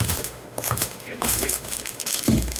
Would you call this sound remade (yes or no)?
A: yes